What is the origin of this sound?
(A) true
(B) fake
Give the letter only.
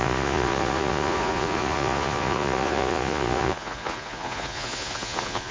B